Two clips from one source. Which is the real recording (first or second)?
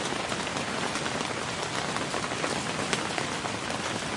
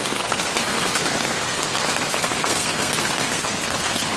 first